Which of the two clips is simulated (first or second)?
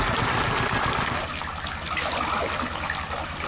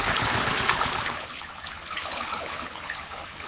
second